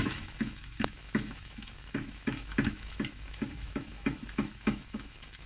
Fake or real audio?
fake